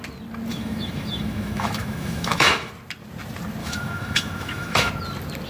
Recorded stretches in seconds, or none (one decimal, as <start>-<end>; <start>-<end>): 0.0-0.5; 2.7-3.6; 4.9-5.5